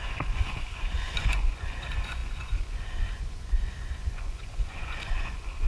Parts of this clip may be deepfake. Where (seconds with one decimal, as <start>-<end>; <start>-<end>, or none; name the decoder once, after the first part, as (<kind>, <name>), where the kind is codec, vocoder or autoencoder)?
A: 0.0-5.7 (vocoder, Vocos)